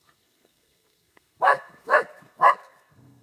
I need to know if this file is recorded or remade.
remade